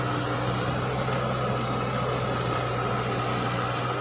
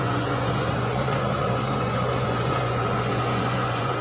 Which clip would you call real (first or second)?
first